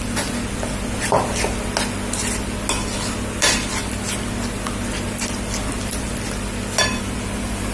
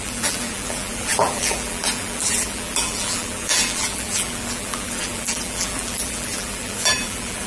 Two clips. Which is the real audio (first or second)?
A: first